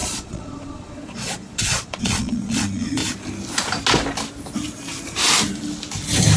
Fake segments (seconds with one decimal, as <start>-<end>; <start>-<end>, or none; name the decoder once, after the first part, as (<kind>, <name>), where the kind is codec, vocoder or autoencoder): 0.0-3.0 (vocoder, Vocos)